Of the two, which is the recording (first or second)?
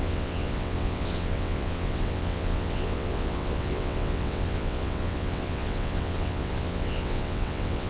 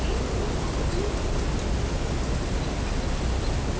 second